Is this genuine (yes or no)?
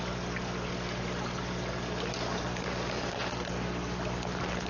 yes